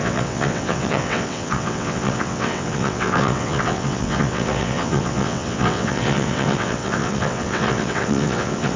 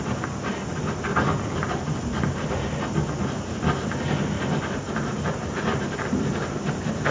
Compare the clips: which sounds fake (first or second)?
first